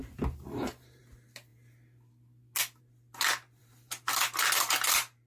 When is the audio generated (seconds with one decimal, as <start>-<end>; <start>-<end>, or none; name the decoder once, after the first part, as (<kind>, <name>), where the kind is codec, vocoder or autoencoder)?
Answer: 0.0-1.0 (vocoder, BigVGAN v2); 3.6-4.1